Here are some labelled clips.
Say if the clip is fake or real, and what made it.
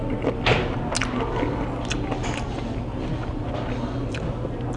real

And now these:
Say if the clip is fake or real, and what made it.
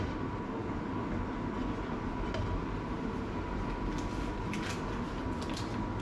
real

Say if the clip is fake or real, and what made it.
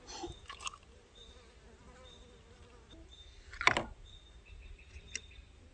real